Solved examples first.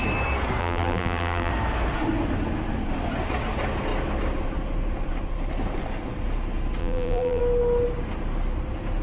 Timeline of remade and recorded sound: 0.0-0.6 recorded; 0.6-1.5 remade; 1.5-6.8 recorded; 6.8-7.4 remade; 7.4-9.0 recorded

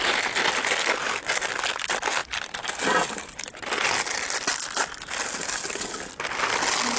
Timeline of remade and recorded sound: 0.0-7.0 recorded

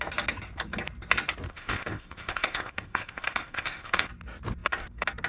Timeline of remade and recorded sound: 0.0-1.5 recorded; 1.5-4.1 remade; 4.1-5.3 recorded